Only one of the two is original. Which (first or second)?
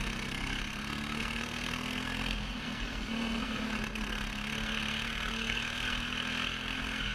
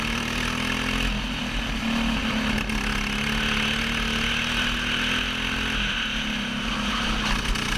second